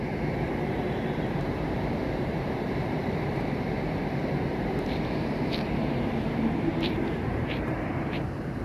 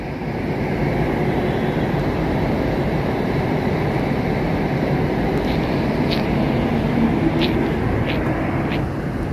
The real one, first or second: second